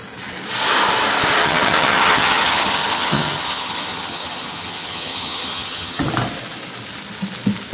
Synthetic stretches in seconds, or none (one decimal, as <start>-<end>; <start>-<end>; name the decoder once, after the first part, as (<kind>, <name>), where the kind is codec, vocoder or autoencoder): 1.4-6.0 (vocoder, HiFi-GAN)